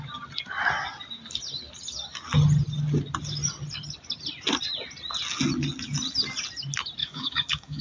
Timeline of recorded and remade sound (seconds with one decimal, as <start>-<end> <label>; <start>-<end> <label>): 0.0-7.0 recorded; 7.0-7.8 remade